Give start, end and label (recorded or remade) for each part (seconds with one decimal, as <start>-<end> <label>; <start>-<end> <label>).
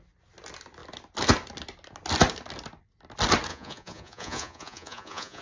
0.0-3.5 recorded; 3.5-5.4 remade